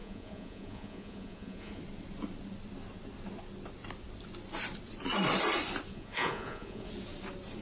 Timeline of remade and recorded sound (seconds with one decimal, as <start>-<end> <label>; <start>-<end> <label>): 0.0-1.8 remade; 1.8-5.9 recorded; 5.9-6.9 remade; 6.9-7.6 recorded